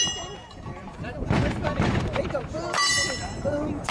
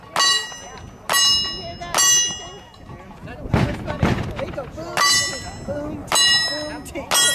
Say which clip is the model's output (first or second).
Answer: first